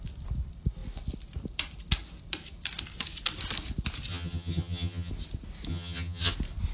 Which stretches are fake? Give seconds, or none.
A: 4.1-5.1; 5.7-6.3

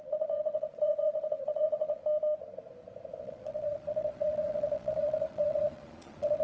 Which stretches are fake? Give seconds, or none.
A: 0.0-2.0; 3.2-6.4

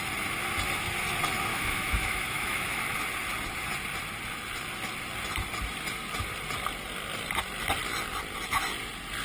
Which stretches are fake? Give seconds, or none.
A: 1.5-2.8